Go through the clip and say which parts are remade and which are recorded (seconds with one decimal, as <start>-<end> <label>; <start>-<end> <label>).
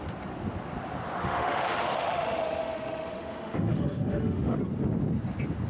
0.0-1.2 recorded; 1.2-4.6 remade; 4.6-5.7 recorded